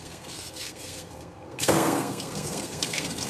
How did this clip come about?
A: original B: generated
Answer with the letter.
B